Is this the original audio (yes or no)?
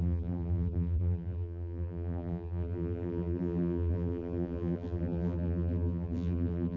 no